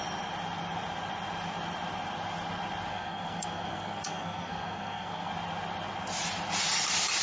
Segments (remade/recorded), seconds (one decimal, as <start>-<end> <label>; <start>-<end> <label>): 0.0-2.9 recorded; 2.9-5.3 remade; 5.3-7.2 recorded